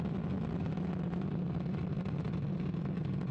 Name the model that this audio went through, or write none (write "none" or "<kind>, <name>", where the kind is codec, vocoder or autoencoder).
none